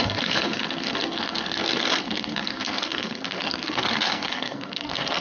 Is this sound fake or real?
fake